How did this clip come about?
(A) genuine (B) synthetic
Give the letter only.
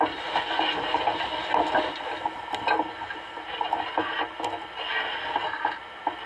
A